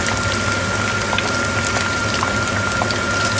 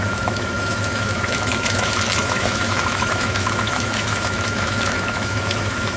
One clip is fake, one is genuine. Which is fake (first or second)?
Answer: second